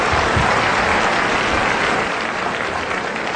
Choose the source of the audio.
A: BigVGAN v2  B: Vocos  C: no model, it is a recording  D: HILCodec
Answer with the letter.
C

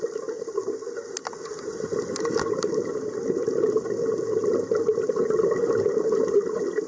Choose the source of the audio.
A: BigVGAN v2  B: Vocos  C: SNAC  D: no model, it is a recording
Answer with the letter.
D